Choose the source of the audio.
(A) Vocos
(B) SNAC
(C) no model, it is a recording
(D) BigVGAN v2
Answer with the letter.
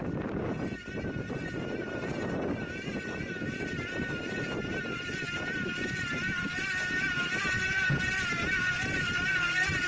D